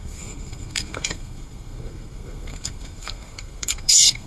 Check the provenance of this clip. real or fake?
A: fake